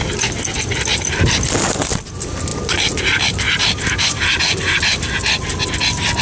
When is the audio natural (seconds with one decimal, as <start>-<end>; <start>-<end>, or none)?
0.0-6.2